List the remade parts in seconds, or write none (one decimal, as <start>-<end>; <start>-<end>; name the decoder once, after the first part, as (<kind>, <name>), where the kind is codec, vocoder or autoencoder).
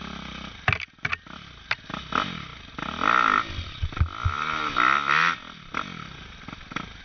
none